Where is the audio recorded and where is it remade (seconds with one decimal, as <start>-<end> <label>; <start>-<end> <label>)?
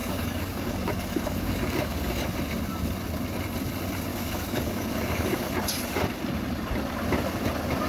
0.0-2.4 remade; 2.4-4.1 recorded; 4.1-5.5 remade; 5.5-7.9 recorded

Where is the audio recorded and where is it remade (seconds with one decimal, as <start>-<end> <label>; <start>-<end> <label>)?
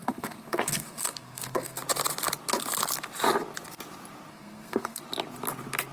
0.0-1.8 remade; 1.8-4.3 recorded; 4.3-5.0 remade; 5.0-5.9 recorded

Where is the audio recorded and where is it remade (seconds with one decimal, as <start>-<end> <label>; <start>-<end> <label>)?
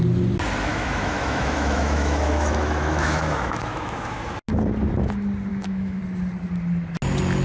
0.0-0.7 recorded; 0.7-4.3 remade; 4.3-5.5 recorded; 5.5-6.0 remade; 6.0-7.4 recorded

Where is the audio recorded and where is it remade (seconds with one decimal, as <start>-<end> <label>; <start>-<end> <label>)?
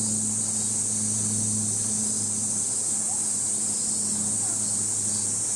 0.0-5.6 recorded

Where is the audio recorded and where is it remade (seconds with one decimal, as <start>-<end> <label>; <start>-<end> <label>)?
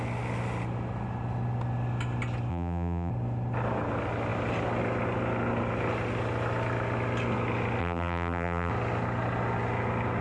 0.0-2.5 recorded; 2.5-3.1 remade; 3.1-7.8 recorded; 7.8-8.7 remade; 8.7-10.2 recorded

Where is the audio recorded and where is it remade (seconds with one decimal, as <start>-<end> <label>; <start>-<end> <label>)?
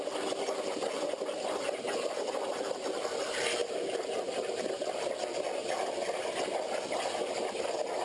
0.0-8.0 recorded